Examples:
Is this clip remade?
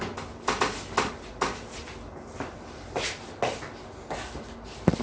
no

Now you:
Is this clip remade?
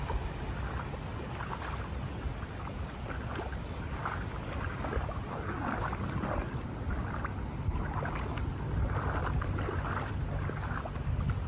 no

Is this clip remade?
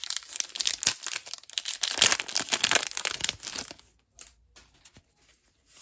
no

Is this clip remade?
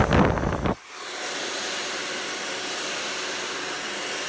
no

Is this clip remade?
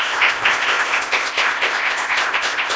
yes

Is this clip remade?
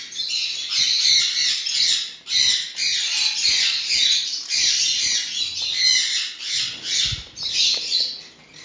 no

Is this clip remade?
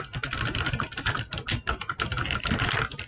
no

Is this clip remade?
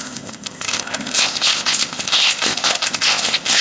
yes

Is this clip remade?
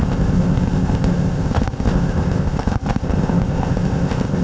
yes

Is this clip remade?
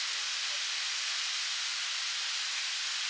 no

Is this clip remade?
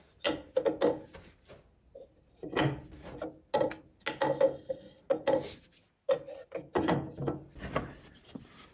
no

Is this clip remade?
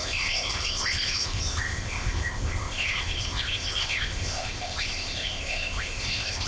yes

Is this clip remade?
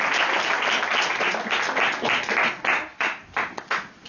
no